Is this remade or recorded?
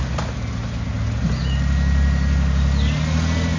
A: recorded